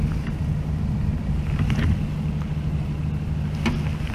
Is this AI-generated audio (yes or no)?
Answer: no